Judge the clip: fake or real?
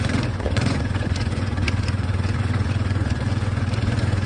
fake